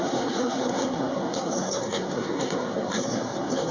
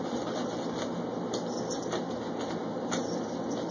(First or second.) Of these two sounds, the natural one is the second